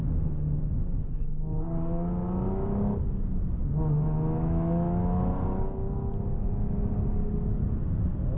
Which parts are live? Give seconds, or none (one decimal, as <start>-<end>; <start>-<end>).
0.0-3.6; 5.3-8.4